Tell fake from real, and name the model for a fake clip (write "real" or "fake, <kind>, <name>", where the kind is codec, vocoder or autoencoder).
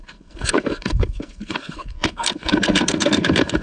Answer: fake, codec, SNAC